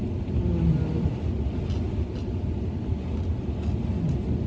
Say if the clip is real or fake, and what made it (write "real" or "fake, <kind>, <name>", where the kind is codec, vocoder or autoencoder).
real